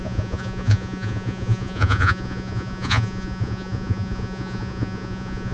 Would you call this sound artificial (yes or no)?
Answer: yes